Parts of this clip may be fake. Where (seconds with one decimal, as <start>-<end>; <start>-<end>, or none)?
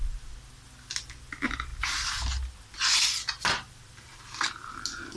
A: none